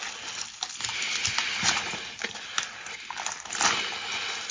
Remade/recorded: recorded